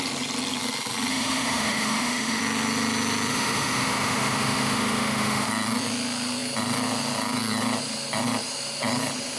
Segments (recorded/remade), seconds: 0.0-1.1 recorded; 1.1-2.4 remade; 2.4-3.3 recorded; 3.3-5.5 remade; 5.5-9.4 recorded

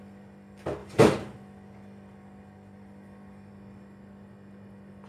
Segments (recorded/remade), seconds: 0.0-0.8 recorded; 0.8-3.5 remade; 3.5-5.1 recorded

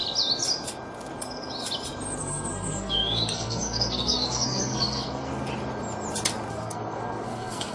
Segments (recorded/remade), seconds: 0.0-2.2 recorded; 2.2-5.3 remade; 5.3-6.5 recorded; 6.5-7.7 remade

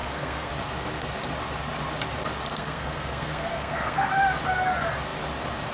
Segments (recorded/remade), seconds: 0.0-0.5 remade; 0.5-2.5 recorded; 2.5-4.1 remade; 4.1-5.7 recorded

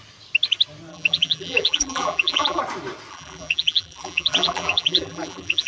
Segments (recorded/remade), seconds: 0.0-0.9 recorded; 0.9-2.6 remade; 2.6-3.1 recorded; 3.1-5.7 remade